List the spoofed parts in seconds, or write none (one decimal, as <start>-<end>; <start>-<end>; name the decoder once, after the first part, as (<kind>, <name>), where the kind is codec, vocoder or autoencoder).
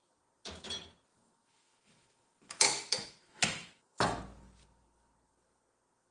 1.1-4.2 (autoencoder, DAC-VAE)